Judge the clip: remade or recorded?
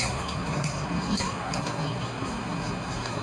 remade